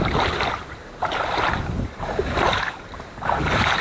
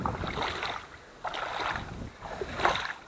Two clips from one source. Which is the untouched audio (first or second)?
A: second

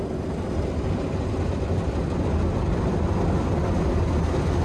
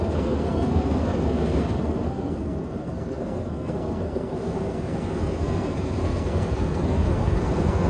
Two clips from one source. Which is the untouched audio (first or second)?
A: first